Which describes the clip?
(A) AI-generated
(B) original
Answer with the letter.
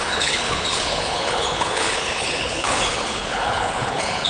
A